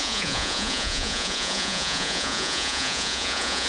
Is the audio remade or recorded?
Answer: remade